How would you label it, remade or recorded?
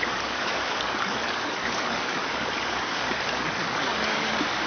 remade